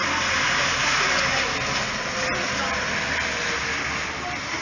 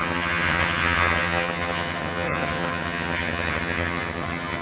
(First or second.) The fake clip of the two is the second